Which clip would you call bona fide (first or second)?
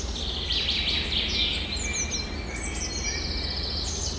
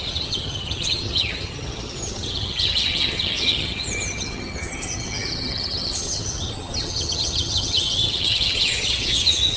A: first